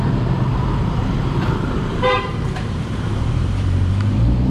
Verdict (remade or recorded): remade